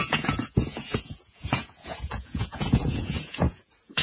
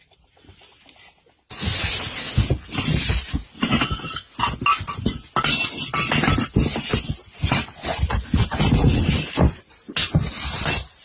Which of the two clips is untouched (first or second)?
second